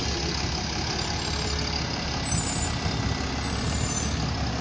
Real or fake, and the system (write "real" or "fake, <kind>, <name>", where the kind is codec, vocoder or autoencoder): real